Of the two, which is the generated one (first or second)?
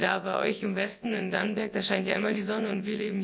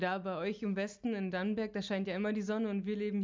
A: first